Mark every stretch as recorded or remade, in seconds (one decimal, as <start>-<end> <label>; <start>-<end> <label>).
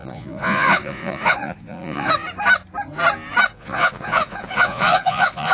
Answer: 0.0-2.1 remade; 2.1-3.5 recorded; 3.5-5.5 remade